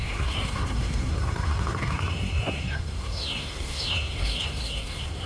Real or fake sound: fake